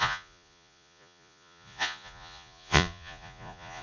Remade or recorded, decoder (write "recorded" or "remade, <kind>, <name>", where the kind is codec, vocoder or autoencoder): remade, vocoder, Vocos